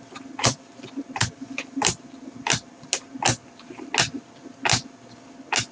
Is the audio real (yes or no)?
yes